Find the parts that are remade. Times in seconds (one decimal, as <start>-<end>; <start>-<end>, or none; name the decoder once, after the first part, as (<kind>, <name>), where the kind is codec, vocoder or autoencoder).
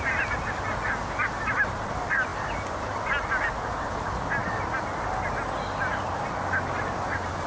none